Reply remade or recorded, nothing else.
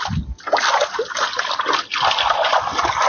recorded